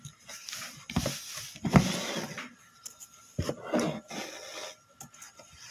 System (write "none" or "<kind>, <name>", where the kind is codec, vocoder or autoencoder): none